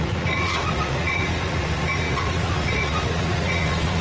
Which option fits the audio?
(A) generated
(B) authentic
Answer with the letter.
A